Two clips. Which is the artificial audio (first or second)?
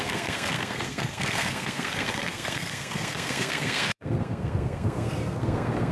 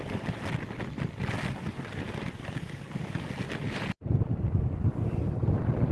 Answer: first